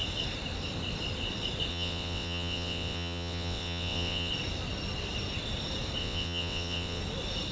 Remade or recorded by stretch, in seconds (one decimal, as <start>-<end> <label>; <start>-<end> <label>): 0.0-1.7 recorded; 1.7-4.3 remade; 4.3-6.0 recorded; 6.0-7.0 remade; 7.0-7.5 recorded